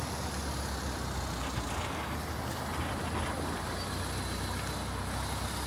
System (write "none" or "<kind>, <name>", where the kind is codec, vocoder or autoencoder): none